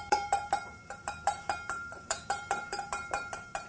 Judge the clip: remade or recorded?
remade